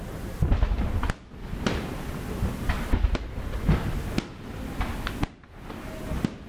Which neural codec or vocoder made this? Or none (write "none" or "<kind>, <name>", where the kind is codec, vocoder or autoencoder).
none